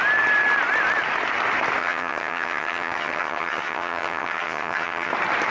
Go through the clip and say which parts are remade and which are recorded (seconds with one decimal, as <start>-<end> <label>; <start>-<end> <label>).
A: 0.0-1.8 recorded; 1.8-5.1 remade; 5.1-5.5 recorded

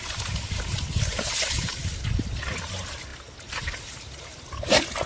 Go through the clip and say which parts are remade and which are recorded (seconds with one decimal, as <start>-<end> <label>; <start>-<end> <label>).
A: 0.0-5.1 recorded

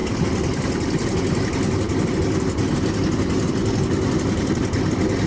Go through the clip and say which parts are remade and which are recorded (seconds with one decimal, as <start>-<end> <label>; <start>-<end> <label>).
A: 0.0-5.3 recorded

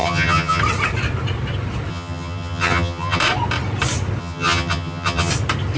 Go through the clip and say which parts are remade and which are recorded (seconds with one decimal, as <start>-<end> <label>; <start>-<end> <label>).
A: 0.0-0.6 remade; 0.6-1.9 recorded; 1.9-3.2 remade; 3.2-4.2 recorded; 4.2-5.3 remade; 5.3-5.8 recorded

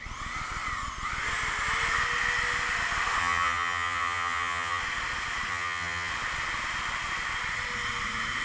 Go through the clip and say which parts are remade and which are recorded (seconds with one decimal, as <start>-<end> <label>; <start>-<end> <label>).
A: 0.0-3.2 recorded; 3.2-4.8 remade; 4.8-5.5 recorded; 5.5-6.1 remade; 6.1-8.4 recorded